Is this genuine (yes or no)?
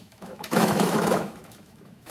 no